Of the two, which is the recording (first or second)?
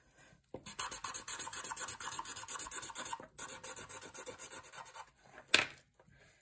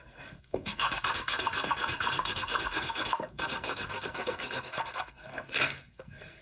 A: first